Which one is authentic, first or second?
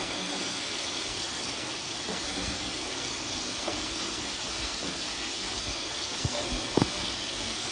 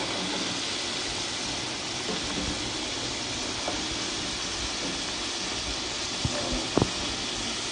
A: second